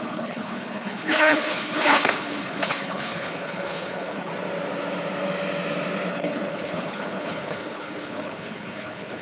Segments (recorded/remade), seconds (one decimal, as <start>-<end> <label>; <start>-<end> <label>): 0.0-4.3 remade; 4.3-6.1 recorded; 6.1-9.2 remade